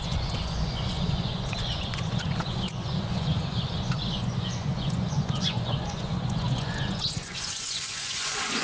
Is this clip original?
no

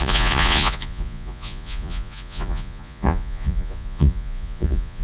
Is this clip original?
no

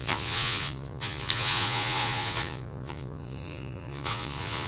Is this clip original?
no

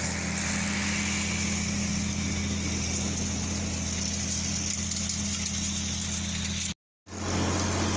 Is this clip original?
yes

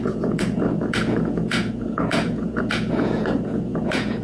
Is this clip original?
no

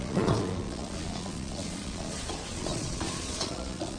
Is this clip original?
no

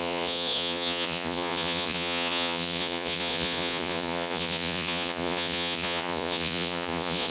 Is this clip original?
no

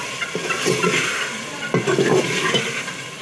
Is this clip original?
yes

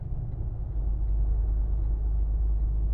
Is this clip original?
yes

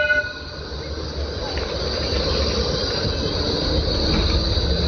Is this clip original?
yes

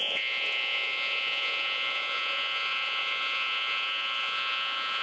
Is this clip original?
no